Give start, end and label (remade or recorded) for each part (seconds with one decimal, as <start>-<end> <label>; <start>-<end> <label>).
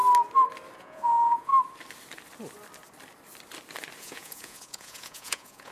0.0-0.8 recorded; 0.8-1.5 remade; 1.5-4.0 recorded; 4.0-5.7 remade